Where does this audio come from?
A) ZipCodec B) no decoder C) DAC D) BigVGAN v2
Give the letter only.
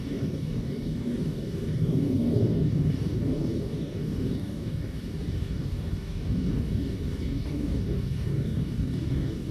C